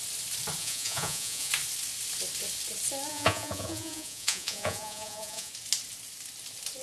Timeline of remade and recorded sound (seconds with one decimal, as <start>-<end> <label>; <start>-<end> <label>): 0.0-0.6 recorded; 0.6-1.5 remade; 1.5-3.1 recorded; 3.1-5.5 remade; 5.5-6.8 recorded

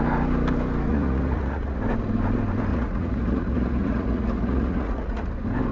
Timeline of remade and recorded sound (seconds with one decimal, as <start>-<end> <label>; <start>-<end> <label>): 0.0-0.9 recorded; 0.9-1.8 remade; 1.8-2.7 recorded; 2.7-5.3 remade; 5.3-5.7 recorded

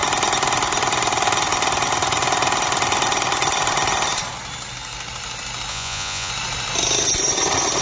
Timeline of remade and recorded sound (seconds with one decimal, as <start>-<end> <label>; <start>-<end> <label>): 0.0-5.7 recorded; 5.7-6.3 remade; 6.3-7.8 recorded